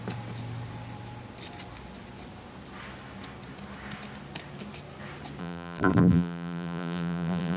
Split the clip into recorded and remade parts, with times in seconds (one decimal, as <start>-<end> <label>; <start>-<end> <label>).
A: 0.0-5.4 recorded; 5.4-7.6 remade